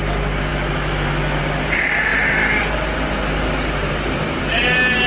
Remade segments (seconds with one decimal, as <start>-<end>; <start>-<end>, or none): 0.5-1.4